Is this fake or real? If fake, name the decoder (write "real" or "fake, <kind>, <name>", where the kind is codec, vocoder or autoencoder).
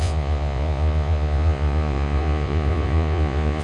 fake, vocoder, Vocos